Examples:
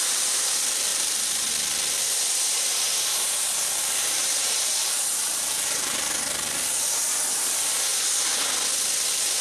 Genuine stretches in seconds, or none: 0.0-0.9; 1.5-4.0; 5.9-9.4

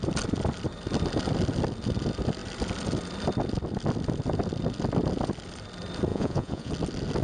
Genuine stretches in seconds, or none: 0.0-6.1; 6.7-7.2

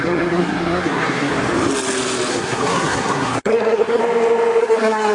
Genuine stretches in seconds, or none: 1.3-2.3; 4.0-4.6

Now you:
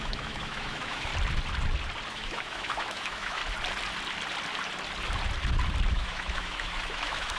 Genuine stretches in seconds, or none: 1.1-2.1; 3.4-5.9

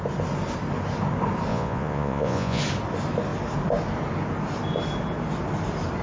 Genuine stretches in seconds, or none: 0.0-1.5; 2.6-6.0